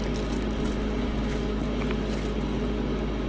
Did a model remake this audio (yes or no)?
no